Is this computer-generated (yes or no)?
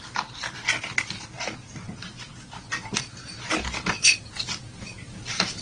no